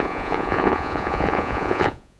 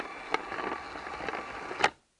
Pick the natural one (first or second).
second